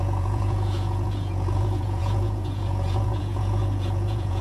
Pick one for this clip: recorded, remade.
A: remade